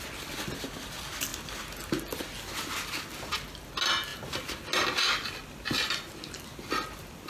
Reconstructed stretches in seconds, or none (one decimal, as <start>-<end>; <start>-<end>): none